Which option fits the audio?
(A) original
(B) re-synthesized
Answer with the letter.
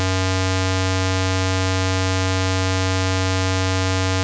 A